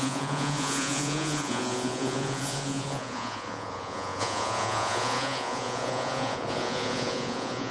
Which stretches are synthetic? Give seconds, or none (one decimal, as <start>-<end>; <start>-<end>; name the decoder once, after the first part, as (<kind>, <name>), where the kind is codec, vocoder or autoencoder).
0.0-7.7 (vocoder, Vocos)